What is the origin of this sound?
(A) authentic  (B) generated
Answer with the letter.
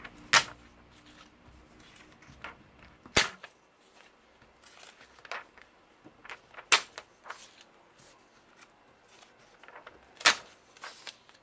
A